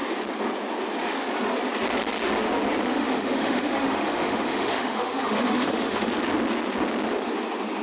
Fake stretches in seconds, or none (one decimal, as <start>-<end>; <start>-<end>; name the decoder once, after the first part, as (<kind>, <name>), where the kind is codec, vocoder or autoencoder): 2.9-6.1 (autoencoder, DAC-VAE)